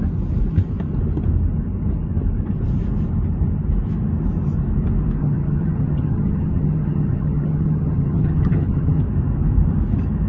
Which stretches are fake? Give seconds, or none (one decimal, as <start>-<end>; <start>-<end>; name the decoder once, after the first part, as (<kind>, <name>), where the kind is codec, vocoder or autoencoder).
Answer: 5.2-9.0 (vocoder, HiFi-GAN)